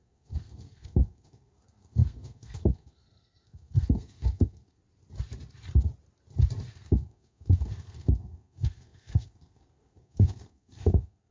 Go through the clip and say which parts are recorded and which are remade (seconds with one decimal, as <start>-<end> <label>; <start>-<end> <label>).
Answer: 0.0-4.8 remade; 4.8-6.7 recorded; 6.7-11.3 remade